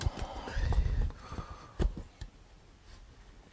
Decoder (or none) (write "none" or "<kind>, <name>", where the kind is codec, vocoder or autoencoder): none